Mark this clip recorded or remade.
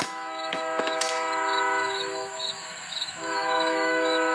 remade